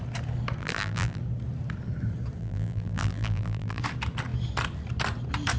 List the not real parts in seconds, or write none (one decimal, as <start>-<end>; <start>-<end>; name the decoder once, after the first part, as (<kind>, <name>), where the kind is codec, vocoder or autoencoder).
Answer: 0.6-1.2 (vocoder, BigVGAN v2); 2.4-3.8